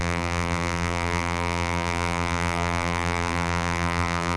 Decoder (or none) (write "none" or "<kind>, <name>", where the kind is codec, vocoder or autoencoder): vocoder, BigVGAN v2